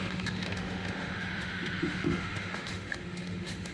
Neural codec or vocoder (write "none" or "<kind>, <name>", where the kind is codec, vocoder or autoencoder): autoencoder, DAC-VAE